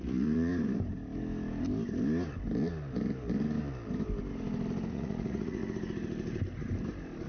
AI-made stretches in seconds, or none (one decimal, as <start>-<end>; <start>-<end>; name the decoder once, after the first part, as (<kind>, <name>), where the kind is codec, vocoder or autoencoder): 0.0-0.5 (vocoder, Vocos); 4.9-5.6